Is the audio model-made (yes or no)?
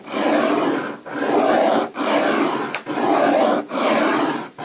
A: yes